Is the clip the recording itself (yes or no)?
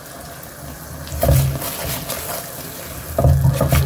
yes